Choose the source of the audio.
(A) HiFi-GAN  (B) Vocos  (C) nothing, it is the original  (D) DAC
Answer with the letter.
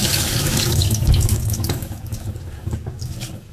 D